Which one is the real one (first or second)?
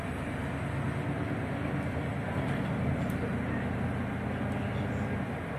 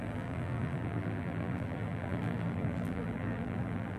first